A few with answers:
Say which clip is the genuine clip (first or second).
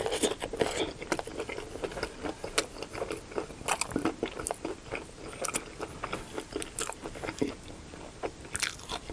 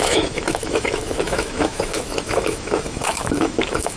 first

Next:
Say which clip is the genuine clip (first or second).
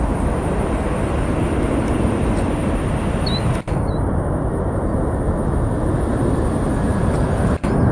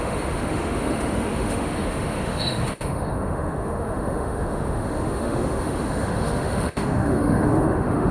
first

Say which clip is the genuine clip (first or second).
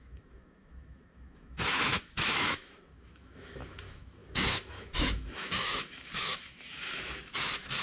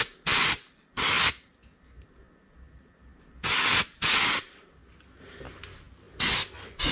second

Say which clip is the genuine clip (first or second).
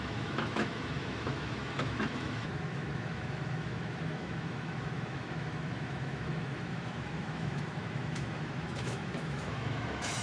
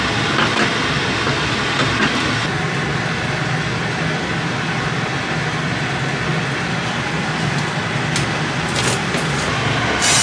second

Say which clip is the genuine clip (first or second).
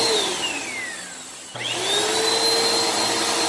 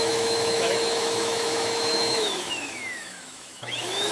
first